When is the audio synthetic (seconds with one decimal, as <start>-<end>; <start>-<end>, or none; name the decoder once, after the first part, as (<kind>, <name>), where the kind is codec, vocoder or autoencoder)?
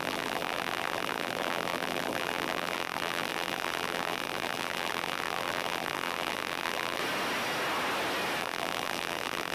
0.0-7.0 (vocoder, BigVGAN v2); 8.4-9.5